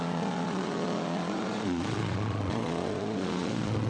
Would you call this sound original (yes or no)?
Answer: no